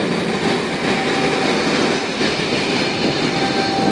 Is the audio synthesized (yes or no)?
no